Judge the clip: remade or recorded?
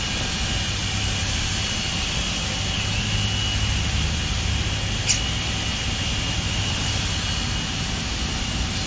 recorded